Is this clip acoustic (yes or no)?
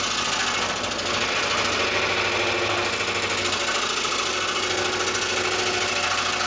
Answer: yes